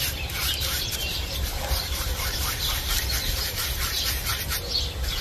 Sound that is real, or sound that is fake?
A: fake